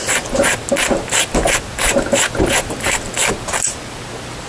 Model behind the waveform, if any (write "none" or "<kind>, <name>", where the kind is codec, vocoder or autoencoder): none